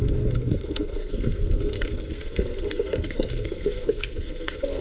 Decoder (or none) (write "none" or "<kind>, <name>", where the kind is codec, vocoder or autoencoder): codec, SNAC